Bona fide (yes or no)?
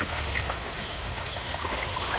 no